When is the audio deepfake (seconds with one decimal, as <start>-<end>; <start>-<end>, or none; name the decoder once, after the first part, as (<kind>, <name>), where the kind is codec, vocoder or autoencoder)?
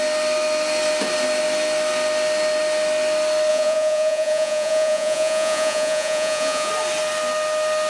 3.5-6.7 (vocoder, Vocos)